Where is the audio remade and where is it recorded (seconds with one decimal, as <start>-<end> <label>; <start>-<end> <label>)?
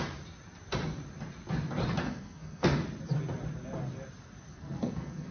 0.0-2.0 recorded; 2.0-2.8 remade; 2.8-4.5 recorded; 4.5-5.3 remade